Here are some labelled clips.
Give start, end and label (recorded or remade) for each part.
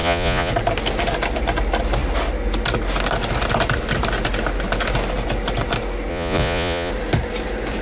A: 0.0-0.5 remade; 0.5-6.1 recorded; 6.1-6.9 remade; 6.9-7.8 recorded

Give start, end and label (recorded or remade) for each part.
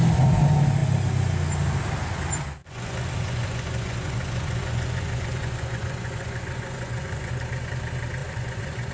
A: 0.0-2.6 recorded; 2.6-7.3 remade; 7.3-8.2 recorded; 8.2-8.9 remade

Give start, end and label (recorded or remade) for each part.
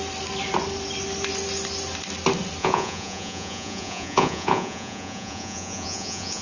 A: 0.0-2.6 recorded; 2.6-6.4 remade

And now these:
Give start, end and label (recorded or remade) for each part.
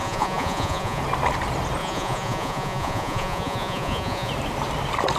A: 0.0-1.0 remade; 1.0-1.8 recorded; 1.8-4.3 remade; 4.3-5.2 recorded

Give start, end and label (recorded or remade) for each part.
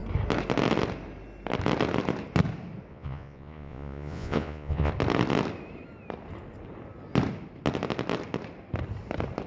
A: 0.0-2.9 recorded; 2.9-4.9 remade; 4.9-9.5 recorded